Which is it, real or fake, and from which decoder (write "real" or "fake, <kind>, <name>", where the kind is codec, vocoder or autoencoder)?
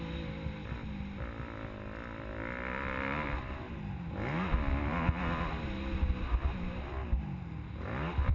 real